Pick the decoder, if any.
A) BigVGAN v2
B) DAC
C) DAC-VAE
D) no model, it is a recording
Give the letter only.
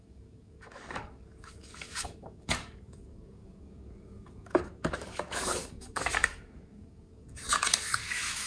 B